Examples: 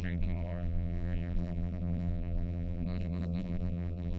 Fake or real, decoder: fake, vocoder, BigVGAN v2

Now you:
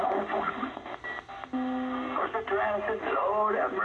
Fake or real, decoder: real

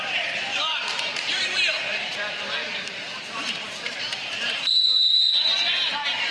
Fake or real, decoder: fake, vocoder, BigVGAN v2